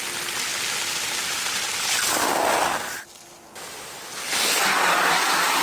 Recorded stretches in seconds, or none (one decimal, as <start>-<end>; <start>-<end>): 0.0-5.6